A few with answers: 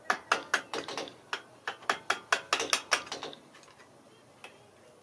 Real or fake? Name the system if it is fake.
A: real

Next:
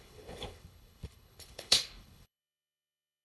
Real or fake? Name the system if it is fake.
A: fake, codec, HILCodec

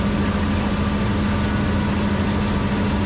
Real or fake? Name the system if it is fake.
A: real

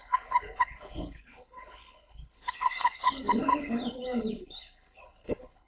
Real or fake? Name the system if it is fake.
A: fake, codec, HILCodec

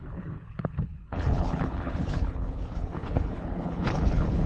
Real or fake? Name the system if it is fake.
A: fake, codec, HILCodec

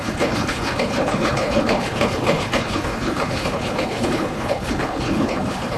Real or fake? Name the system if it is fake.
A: fake, codec, HILCodec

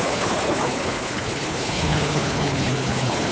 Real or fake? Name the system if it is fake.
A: fake, codec, HILCodec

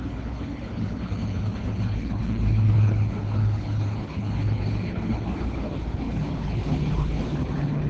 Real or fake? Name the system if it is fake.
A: fake, codec, HILCodec